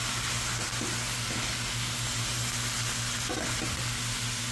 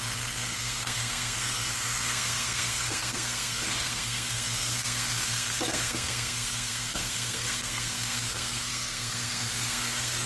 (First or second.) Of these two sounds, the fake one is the second